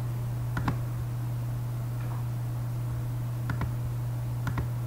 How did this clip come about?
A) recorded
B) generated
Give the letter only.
A